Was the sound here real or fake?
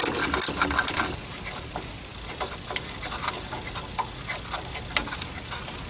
real